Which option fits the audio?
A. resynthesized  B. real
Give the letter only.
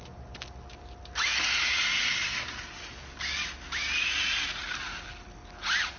B